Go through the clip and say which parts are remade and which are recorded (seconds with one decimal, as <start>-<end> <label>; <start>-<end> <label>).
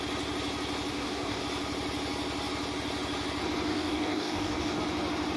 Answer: 0.0-0.9 recorded; 0.9-1.4 remade; 1.4-3.7 recorded; 3.7-4.8 remade; 4.8-5.4 recorded